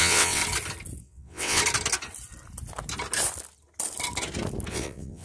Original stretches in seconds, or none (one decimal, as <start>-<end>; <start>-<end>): 0.4-1.0; 1.6-4.7